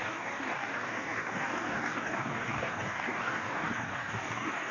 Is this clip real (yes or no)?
no